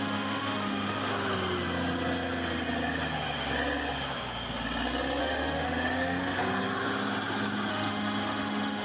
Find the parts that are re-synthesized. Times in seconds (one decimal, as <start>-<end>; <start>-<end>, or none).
0.0-1.1; 5.2-6.4; 7.7-8.8